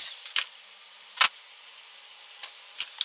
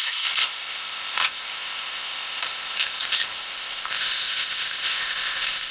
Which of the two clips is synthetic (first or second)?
second